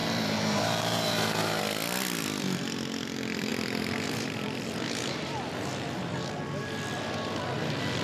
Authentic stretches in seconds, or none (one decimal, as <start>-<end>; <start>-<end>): 1.6-3.5; 6.3-8.0